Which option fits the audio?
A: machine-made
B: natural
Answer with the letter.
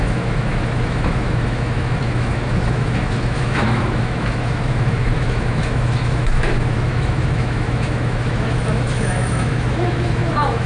A